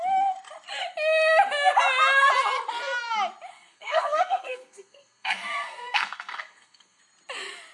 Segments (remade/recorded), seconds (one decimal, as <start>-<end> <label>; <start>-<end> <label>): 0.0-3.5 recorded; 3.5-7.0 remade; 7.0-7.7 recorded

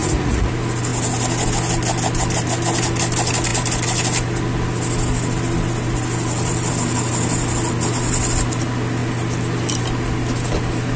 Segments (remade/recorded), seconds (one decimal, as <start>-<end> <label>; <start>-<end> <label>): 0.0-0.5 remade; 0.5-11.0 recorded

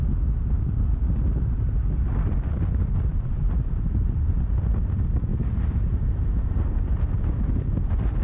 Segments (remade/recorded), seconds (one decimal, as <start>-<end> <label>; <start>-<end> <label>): 0.0-3.1 recorded; 3.1-4.3 remade; 4.3-5.3 recorded; 5.3-7.1 remade; 7.1-8.2 recorded

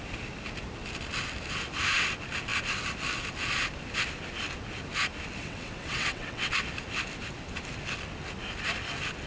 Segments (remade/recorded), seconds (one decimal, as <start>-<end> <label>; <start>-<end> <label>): 0.0-5.4 recorded; 5.4-6.5 remade; 6.5-9.3 recorded